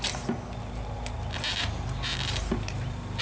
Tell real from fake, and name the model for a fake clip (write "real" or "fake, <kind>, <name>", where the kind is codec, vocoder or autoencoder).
real